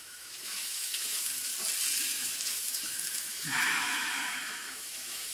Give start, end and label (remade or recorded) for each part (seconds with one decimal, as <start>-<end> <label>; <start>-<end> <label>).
0.0-1.5 remade; 1.5-2.0 recorded; 2.0-5.3 remade

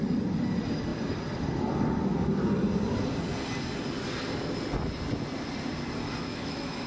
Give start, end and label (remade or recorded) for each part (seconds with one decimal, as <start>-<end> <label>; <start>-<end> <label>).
0.0-6.2 recorded; 6.2-6.9 remade

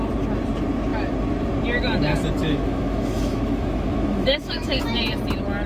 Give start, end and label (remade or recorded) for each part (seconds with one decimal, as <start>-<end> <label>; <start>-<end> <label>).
0.0-2.4 recorded; 2.4-4.8 remade; 4.8-5.7 recorded

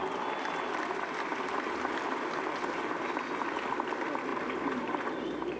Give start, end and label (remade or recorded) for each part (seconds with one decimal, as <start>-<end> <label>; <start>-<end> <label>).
0.0-5.6 recorded

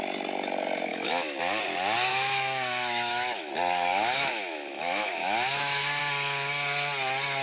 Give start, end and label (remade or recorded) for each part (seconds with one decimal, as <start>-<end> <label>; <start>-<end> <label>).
0.0-0.9 recorded; 0.9-1.4 remade; 1.4-2.1 recorded; 2.1-3.5 remade; 3.5-3.9 recorded; 3.9-6.0 remade; 6.0-7.4 recorded

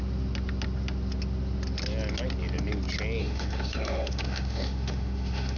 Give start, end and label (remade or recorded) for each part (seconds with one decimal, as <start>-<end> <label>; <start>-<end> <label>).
0.0-3.2 recorded; 3.2-5.6 remade